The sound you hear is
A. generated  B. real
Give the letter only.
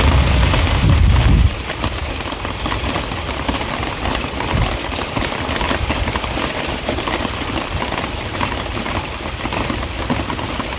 B